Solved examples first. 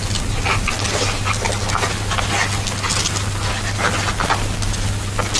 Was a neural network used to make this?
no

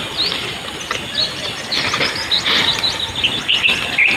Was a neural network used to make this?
no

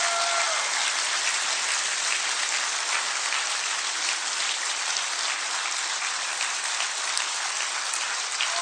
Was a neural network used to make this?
no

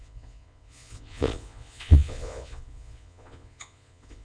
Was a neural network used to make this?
yes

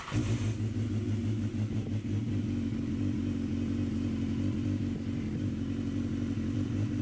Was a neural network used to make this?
no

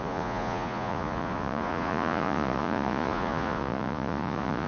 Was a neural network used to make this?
yes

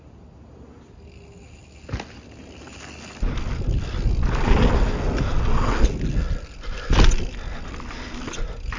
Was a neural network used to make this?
no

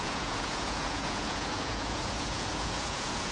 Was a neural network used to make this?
yes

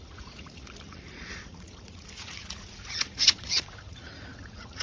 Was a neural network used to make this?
yes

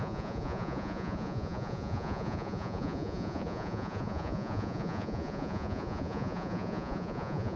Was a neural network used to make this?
yes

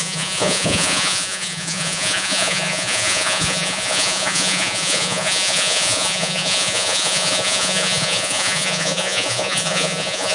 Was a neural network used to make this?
yes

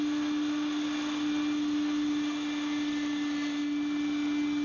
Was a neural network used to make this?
no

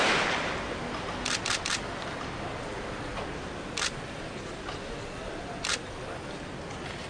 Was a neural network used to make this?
no